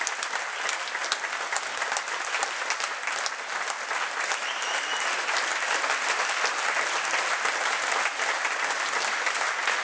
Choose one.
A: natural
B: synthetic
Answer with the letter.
A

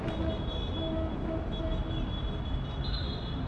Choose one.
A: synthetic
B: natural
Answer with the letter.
B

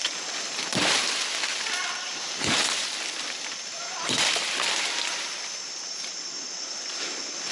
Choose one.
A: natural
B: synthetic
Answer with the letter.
A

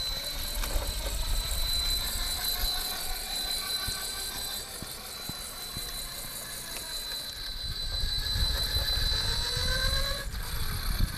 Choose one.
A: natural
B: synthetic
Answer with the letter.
A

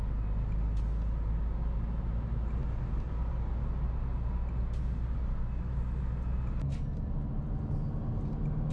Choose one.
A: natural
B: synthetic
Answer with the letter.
A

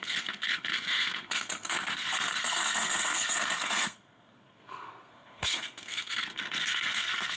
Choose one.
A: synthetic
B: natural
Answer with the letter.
A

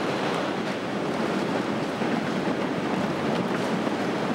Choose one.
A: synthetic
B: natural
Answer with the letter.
B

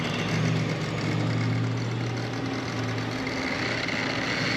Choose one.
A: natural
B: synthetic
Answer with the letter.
A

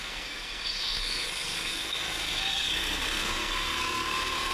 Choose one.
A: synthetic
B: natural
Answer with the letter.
A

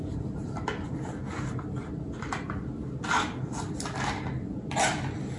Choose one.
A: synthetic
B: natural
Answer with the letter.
B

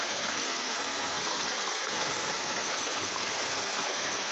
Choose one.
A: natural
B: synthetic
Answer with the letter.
B